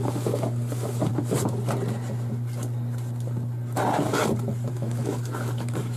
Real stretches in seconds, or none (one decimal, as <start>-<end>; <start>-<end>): 1.1-4.7